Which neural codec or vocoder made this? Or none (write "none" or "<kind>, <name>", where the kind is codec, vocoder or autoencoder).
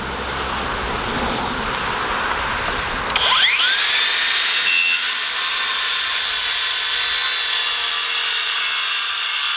none